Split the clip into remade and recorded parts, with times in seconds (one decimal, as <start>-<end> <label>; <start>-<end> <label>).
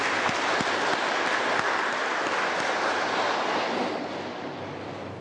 0.0-2.9 recorded; 2.9-3.9 remade; 3.9-5.2 recorded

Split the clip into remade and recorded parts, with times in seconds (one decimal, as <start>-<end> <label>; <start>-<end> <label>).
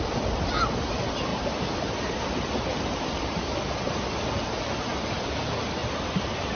0.0-1.3 recorded; 1.3-2.8 remade; 2.8-5.8 recorded; 5.8-6.5 remade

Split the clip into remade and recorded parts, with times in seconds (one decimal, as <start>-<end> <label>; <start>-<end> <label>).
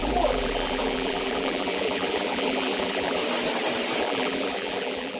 0.0-3.2 remade; 3.2-4.0 recorded; 4.0-5.2 remade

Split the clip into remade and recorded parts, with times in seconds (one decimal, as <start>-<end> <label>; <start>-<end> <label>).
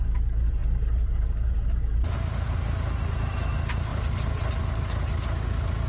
0.0-0.6 recorded; 0.6-2.5 remade; 2.5-3.9 recorded; 3.9-4.5 remade; 4.5-5.9 recorded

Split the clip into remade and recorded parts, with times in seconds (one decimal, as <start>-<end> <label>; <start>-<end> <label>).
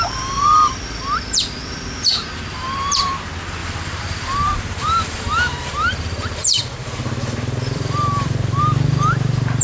0.0-3.6 recorded; 3.6-8.6 remade; 8.6-9.6 recorded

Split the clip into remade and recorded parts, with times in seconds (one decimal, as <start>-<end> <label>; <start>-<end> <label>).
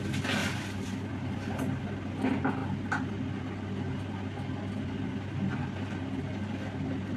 0.0-0.4 recorded; 0.4-1.6 remade; 1.6-7.2 recorded